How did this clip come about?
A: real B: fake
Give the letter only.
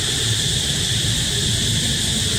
A